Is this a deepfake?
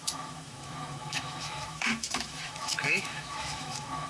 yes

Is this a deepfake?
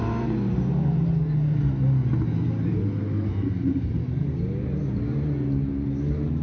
no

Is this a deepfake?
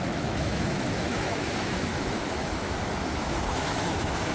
yes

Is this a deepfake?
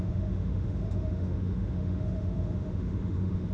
yes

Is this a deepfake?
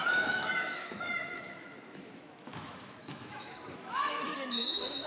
yes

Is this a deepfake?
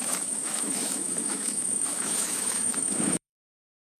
yes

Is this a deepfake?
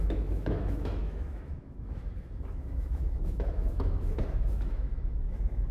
yes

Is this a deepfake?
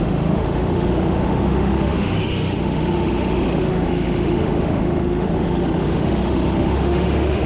yes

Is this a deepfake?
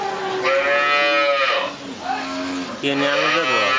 no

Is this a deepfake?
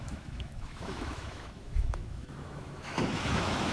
yes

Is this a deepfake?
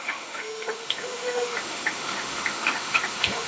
yes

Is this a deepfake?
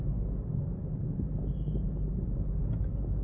no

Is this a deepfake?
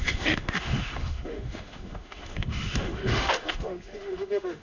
yes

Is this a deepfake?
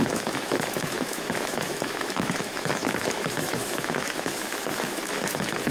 yes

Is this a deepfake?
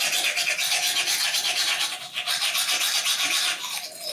no